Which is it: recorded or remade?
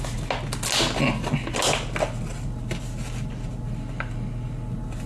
recorded